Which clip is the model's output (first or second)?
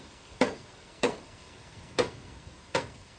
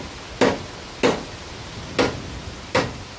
first